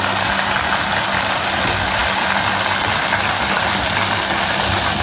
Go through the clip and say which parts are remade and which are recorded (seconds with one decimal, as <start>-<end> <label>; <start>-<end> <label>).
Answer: 0.0-5.0 recorded